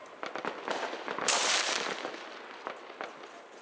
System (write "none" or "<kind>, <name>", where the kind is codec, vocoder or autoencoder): none